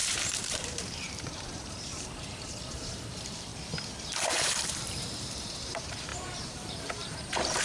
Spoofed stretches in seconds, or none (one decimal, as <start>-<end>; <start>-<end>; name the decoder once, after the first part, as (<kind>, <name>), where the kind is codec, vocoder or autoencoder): 0.0-3.5 (vocoder, BigVGAN v2); 4.3-7.6